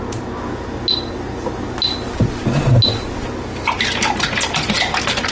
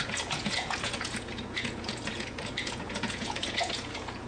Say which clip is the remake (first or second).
second